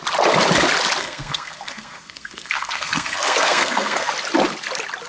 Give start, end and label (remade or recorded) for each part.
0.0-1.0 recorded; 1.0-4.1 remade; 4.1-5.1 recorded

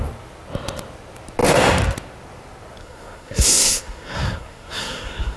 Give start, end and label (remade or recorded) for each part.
0.0-2.8 recorded; 2.8-5.4 remade

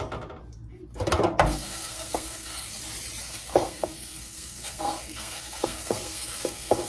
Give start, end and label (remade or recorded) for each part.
0.0-1.5 recorded; 1.5-2.8 remade; 2.8-3.2 recorded; 3.2-6.9 remade

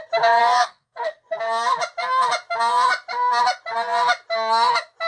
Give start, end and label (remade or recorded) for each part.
0.0-0.4 recorded; 0.4-1.4 remade; 1.4-5.1 recorded